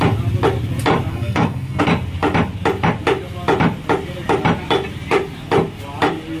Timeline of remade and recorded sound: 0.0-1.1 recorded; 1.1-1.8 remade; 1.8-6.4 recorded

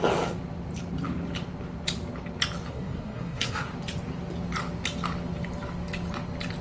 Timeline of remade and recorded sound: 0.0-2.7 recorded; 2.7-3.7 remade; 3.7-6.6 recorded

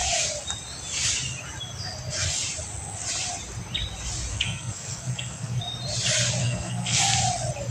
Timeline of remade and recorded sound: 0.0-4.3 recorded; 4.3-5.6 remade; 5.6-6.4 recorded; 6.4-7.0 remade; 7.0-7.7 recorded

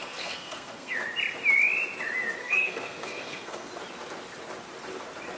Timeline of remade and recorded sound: 0.0-0.9 remade; 0.9-2.4 recorded; 2.4-3.7 remade; 3.7-5.4 recorded

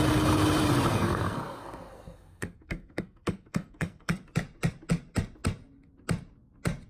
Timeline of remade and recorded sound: 0.0-0.9 recorded; 0.9-4.1 remade; 4.1-6.9 recorded

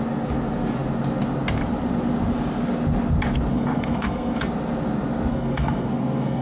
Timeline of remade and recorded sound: 0.0-3.5 recorded; 3.5-4.4 remade; 4.4-5.3 recorded; 5.3-6.4 remade